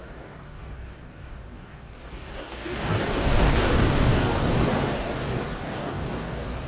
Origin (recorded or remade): remade